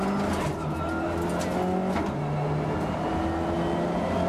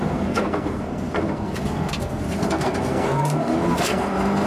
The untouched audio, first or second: first